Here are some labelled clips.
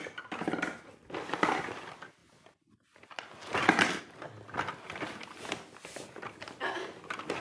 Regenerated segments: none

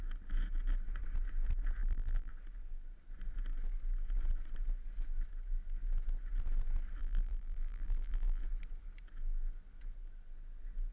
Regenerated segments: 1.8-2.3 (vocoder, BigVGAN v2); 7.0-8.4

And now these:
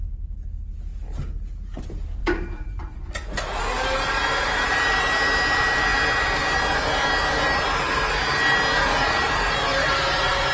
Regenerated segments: 2.2-5.0 (vocoder, BigVGAN v2); 9.7-10.5

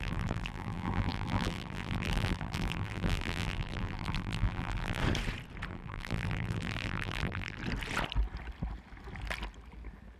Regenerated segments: 0.0-5.0 (vocoder, BigVGAN v2); 5.7-7.6

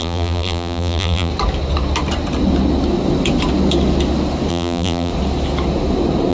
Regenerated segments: 0.0-1.3 (vocoder, BigVGAN v2); 4.5-5.1

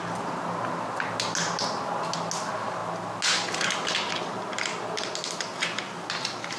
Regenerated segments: none

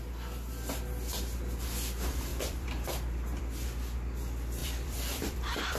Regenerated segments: 2.3-3.4 (vocoder, BigVGAN v2); 4.6-5.8